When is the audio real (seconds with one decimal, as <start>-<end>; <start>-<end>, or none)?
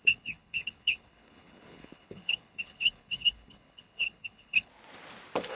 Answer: 4.7-5.5